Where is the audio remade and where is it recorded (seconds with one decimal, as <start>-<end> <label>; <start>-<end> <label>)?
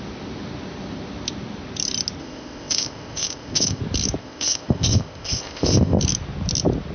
0.0-2.2 recorded; 2.2-3.8 remade; 3.8-4.2 recorded; 4.2-6.0 remade; 6.0-6.9 recorded